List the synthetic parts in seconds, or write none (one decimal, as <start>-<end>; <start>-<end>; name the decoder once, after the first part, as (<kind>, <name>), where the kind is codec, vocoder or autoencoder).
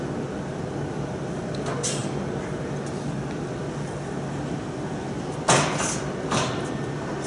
none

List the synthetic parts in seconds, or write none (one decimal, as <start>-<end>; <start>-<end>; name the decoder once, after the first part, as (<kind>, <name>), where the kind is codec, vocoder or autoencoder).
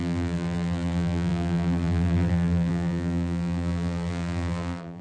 0.0-5.0 (vocoder, BigVGAN v2)